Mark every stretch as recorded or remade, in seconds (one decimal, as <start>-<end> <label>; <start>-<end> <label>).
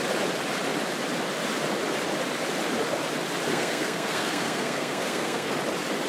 0.0-3.5 recorded; 3.5-5.5 remade; 5.5-6.1 recorded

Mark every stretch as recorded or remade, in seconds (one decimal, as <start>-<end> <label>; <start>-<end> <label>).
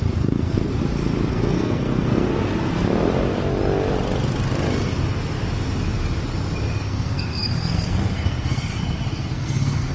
0.0-0.7 remade; 0.7-1.3 recorded; 1.3-2.3 remade; 2.3-6.7 recorded; 6.7-9.9 remade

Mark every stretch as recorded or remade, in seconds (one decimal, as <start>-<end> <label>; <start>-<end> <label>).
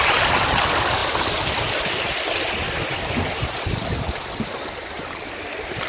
0.0-5.9 recorded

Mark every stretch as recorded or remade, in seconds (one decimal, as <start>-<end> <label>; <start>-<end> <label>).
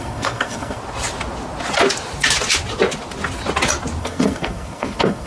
0.0-0.8 remade; 0.8-4.0 recorded; 4.0-5.3 remade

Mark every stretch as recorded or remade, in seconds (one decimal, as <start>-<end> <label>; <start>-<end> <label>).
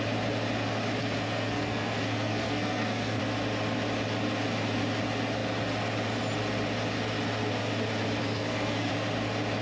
0.0-1.0 recorded; 1.0-3.2 remade; 3.2-8.2 recorded; 8.2-8.9 remade; 8.9-9.6 recorded